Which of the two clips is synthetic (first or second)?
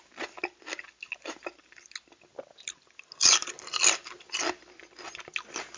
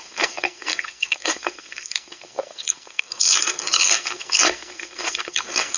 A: second